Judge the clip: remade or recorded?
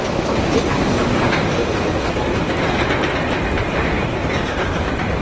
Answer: remade